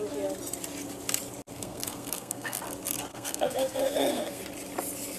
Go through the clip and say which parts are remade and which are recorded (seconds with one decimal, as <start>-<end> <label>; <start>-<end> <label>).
0.0-1.5 recorded; 1.5-2.6 remade; 2.6-3.1 recorded; 3.1-4.4 remade; 4.4-5.2 recorded